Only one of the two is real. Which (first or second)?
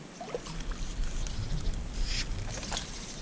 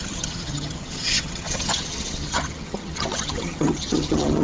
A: first